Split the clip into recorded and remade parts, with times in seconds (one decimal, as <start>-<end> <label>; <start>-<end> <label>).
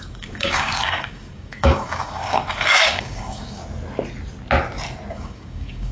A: 0.0-3.6 remade; 3.6-5.1 recorded; 5.1-5.9 remade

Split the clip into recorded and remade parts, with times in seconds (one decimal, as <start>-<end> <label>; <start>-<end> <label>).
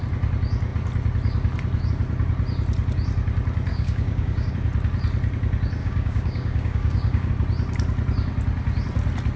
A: 0.0-3.7 recorded; 3.7-4.5 remade; 4.5-5.8 recorded; 5.8-7.3 remade; 7.3-9.4 recorded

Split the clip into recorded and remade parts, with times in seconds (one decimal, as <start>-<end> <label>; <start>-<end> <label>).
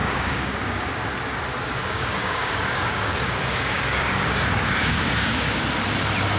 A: 0.0-1.0 remade; 1.0-1.8 recorded; 1.8-5.6 remade; 5.6-6.4 recorded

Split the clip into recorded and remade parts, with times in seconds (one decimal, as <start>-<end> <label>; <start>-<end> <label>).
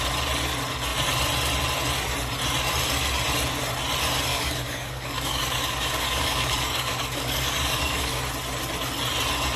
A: 0.0-4.3 recorded; 4.3-8.2 remade; 8.2-9.6 recorded